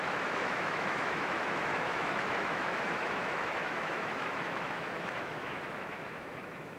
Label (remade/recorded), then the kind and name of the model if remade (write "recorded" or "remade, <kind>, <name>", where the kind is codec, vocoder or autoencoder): remade, autoencoder, DAC-VAE